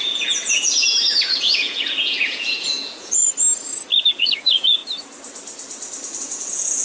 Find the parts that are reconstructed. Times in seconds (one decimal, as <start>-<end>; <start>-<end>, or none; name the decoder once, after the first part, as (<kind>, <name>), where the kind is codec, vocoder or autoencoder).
0.0-3.2 (vocoder, Vocos); 4.1-4.8; 6.2-6.8